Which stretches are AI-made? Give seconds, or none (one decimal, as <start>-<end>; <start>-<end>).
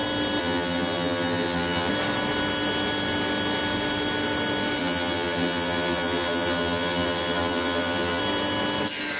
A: 0.4-1.9; 4.8-8.2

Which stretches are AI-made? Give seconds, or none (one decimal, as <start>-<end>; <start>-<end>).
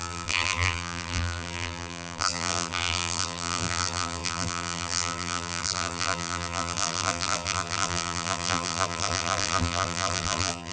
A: 0.0-10.7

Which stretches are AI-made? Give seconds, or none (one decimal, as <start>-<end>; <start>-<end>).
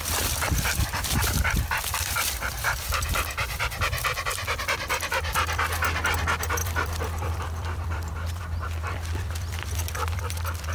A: 0.0-10.7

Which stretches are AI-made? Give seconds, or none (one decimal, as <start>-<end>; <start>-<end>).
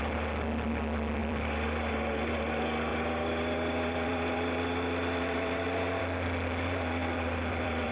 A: 1.2-1.9; 2.9-6.0; 7.0-7.9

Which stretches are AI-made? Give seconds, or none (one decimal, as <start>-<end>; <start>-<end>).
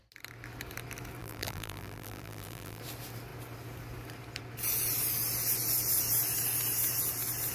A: 1.2-2.8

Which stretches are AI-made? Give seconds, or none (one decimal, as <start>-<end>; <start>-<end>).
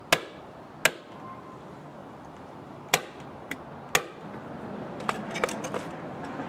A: 2.0-3.6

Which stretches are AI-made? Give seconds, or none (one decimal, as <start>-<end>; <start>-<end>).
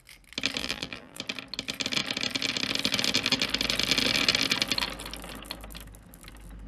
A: 0.6-1.2